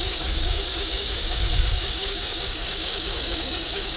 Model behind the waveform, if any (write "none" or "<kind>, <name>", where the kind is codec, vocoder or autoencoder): codec, DAC